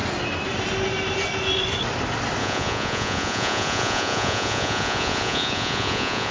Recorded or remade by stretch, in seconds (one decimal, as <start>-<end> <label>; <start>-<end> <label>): 0.0-2.4 recorded; 2.4-6.3 remade